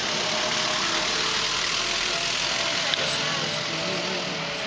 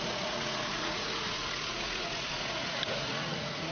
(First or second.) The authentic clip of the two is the first